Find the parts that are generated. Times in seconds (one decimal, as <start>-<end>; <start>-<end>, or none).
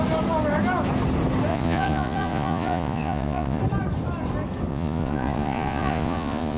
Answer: 1.5-3.6; 4.7-6.6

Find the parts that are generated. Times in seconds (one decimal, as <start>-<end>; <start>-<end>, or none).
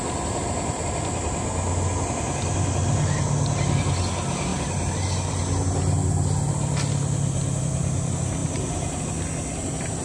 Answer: 8.4-9.0